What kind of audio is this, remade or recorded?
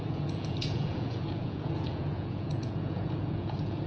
remade